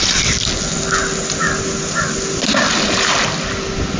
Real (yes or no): yes